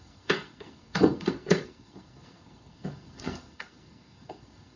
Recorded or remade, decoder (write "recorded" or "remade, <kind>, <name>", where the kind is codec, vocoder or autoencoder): remade, codec, SNAC